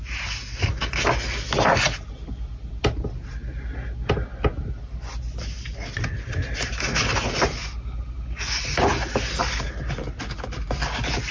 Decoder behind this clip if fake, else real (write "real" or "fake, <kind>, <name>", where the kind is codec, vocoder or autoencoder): real